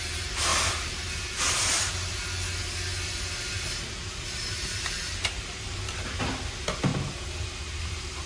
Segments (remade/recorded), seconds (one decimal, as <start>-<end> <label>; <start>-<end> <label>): 0.0-0.5 recorded; 0.5-1.9 remade; 1.9-4.0 recorded; 4.0-5.9 remade; 5.9-8.3 recorded